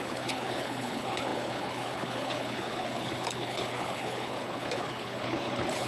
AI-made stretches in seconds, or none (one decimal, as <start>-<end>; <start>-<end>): 0.0-5.9